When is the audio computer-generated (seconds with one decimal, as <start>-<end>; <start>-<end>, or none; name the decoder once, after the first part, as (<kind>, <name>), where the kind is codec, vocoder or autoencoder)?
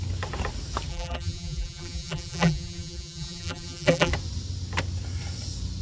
0.9-4.1 (vocoder, BigVGAN v2)